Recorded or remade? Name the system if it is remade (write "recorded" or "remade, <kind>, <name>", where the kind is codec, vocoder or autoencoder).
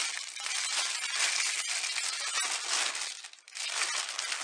recorded